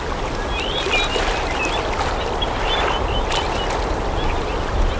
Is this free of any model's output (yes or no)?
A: yes